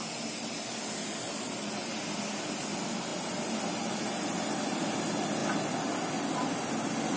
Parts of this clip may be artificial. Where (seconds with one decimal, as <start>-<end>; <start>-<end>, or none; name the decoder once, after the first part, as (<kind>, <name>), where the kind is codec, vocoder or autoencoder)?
none